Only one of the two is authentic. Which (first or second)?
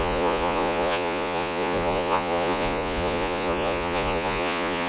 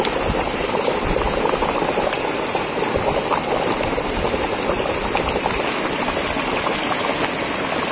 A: second